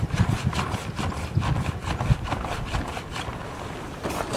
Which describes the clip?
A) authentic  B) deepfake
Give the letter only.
A